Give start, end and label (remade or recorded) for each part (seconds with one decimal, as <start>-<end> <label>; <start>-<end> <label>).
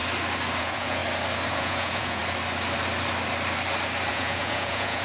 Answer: 0.0-0.6 recorded; 0.6-1.0 remade; 1.0-1.5 recorded; 1.5-2.2 remade; 2.2-4.1 recorded; 4.1-5.0 remade